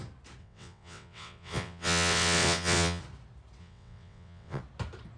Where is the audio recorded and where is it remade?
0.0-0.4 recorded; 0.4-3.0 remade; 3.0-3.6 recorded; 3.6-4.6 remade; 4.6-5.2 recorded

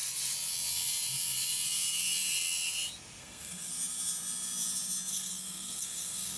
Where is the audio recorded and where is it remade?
0.0-3.2 recorded; 3.2-3.7 remade; 3.7-5.1 recorded; 5.1-6.4 remade

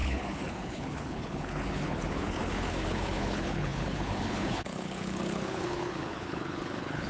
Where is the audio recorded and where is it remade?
0.0-7.1 remade